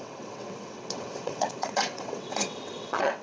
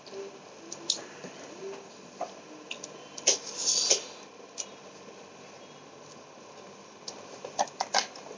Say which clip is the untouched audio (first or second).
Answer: second